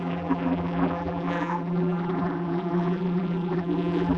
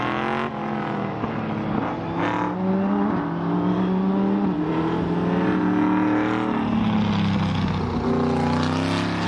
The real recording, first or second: second